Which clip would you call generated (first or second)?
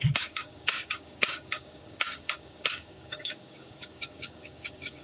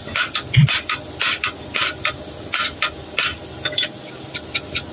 first